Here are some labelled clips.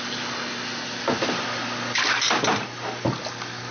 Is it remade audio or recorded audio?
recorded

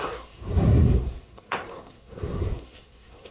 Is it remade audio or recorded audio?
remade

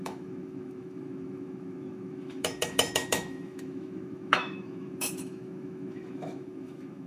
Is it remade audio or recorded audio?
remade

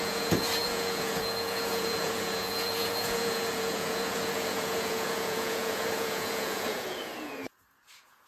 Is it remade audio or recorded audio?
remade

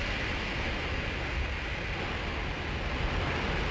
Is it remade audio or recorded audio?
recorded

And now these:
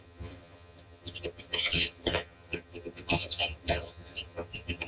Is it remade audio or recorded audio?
remade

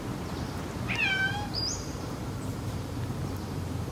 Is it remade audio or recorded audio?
remade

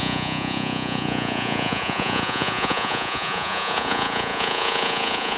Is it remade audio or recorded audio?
remade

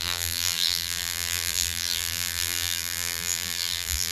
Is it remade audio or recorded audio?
remade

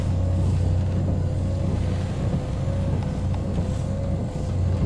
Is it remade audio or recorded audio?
recorded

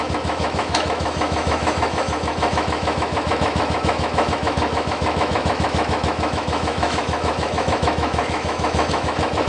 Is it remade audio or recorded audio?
remade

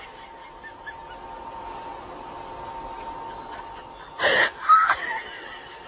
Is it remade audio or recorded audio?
recorded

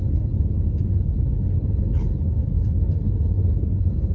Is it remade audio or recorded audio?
remade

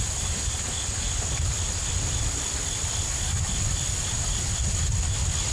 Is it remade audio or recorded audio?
recorded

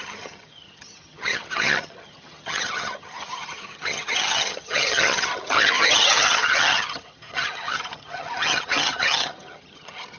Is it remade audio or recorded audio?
remade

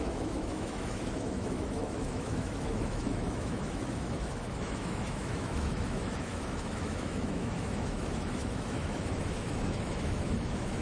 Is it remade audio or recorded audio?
remade